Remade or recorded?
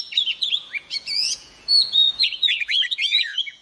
remade